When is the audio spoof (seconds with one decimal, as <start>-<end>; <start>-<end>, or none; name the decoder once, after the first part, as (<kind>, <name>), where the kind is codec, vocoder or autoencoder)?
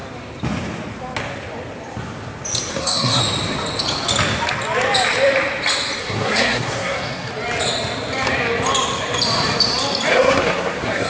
2.7-3.2 (codec, SNAC); 6.0-7.3; 10.1-11.1